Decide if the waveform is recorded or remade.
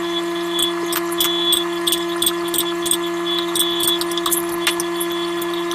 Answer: recorded